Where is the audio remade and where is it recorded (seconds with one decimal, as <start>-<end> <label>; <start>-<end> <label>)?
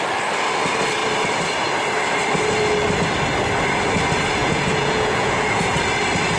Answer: 0.0-4.4 recorded; 4.4-5.6 remade; 5.6-6.4 recorded